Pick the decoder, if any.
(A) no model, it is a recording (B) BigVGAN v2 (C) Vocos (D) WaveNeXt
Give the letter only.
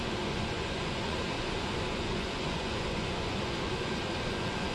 C